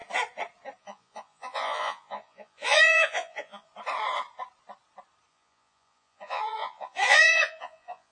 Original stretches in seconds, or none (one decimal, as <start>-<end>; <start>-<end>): 0.0-0.8; 3.7-5.3

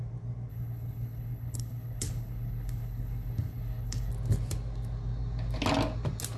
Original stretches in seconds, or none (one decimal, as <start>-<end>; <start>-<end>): 0.0-0.5; 4.1-6.4

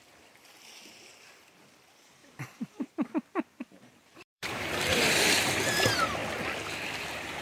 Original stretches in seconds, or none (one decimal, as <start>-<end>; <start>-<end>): 0.0-2.2; 3.1-4.1; 5.1-7.4

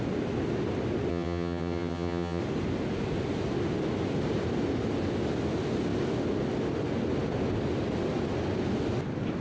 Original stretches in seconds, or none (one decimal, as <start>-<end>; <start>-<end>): 0.0-1.1; 2.4-9.4

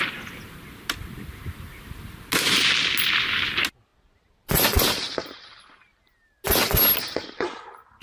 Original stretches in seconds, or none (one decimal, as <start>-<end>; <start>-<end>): 0.0-8.0

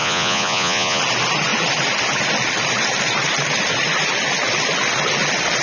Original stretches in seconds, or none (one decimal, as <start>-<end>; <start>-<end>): 1.0-5.6